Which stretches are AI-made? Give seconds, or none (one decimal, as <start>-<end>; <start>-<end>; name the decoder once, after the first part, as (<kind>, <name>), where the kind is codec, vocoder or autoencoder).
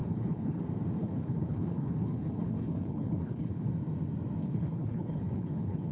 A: 0.0-0.6 (codec, HILCodec); 1.0-3.7; 4.4-5.9